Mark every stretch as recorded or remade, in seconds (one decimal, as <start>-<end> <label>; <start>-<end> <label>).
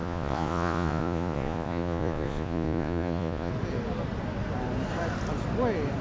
0.0-3.5 remade; 3.5-6.0 recorded